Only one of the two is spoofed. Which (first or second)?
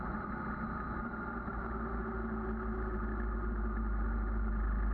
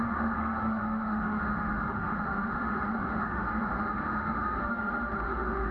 second